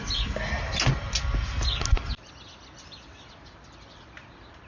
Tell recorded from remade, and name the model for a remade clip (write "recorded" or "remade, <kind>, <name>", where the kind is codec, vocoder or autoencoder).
recorded